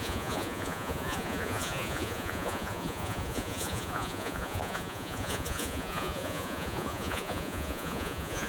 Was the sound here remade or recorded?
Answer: remade